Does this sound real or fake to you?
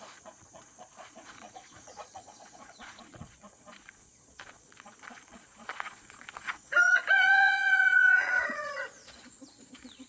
fake